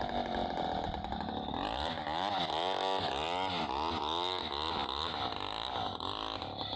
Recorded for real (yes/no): yes